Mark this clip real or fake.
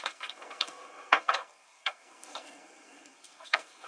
fake